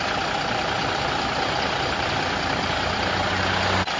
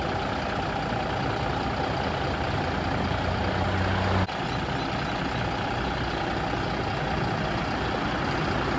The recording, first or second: second